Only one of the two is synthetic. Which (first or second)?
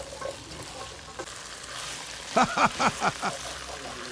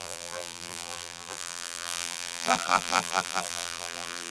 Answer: second